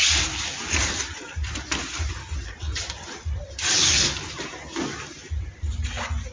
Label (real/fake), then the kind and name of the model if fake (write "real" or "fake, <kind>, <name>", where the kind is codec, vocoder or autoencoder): real